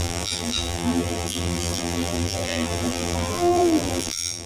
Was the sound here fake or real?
fake